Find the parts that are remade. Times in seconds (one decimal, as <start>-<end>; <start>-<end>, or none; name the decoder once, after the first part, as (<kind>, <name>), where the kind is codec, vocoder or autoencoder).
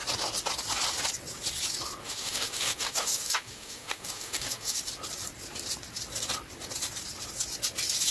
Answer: 2.0-4.8 (codec, DAC)